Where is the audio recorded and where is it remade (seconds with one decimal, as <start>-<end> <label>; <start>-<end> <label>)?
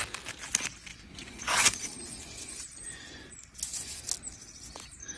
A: 0.0-0.9 recorded; 0.9-4.0 remade; 4.0-5.2 recorded